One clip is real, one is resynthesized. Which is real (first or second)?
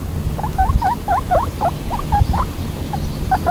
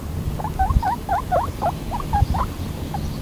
first